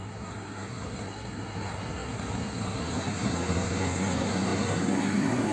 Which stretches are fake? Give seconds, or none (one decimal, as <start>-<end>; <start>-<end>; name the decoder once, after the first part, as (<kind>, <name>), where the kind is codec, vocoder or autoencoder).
0.0-5.5 (codec, SNAC)